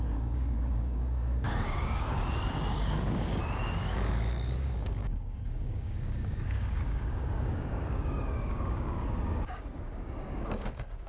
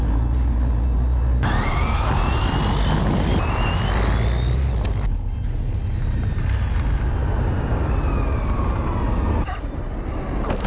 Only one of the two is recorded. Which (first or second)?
second